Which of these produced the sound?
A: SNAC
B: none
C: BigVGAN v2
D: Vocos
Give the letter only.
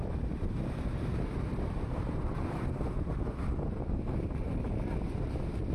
C